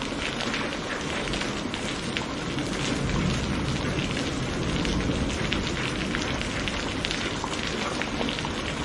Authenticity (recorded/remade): recorded